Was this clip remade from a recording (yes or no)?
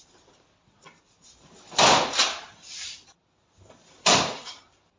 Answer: no